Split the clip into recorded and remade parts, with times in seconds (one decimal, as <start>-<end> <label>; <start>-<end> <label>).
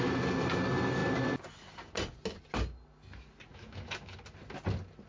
0.0-3.5 recorded; 3.5-4.2 remade; 4.2-5.1 recorded